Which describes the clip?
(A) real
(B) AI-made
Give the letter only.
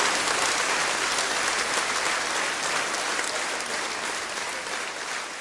A